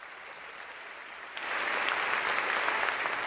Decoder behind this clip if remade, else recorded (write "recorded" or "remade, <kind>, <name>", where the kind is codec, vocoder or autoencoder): recorded